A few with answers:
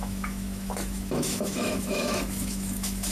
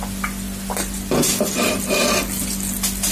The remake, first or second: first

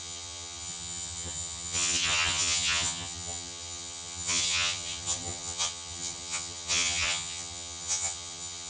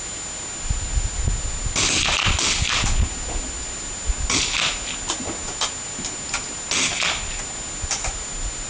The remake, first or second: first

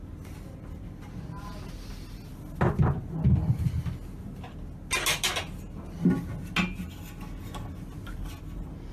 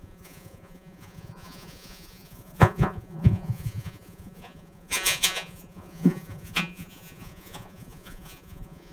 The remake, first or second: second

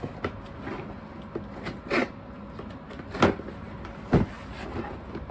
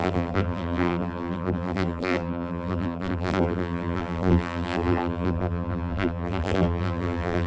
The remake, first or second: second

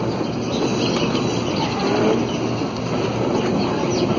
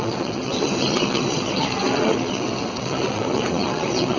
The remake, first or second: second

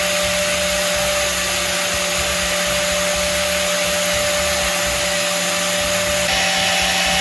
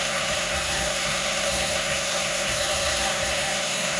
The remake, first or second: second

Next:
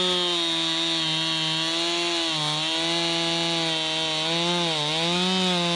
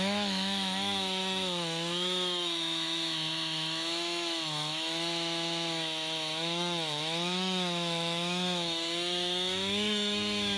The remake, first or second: second